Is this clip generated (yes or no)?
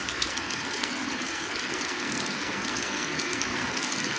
yes